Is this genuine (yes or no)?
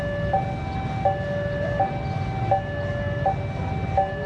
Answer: yes